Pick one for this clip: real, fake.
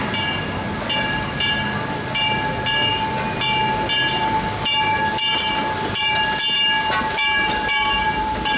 real